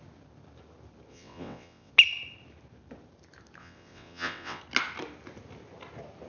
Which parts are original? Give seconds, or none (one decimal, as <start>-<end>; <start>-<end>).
0.0-1.1; 1.9-3.6; 4.6-6.3